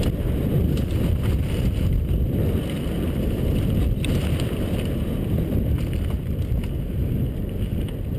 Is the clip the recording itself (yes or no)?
yes